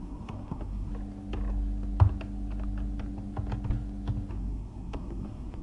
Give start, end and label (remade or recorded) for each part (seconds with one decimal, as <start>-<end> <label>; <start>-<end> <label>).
0.0-0.9 remade; 0.9-4.3 recorded; 4.3-5.6 remade